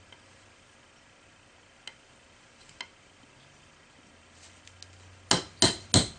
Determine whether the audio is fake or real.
real